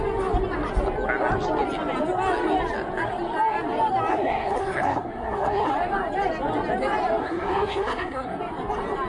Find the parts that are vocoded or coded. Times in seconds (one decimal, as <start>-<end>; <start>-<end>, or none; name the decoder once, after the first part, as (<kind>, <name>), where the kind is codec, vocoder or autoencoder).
4.1-5.7 (codec, SNAC); 7.2-8.4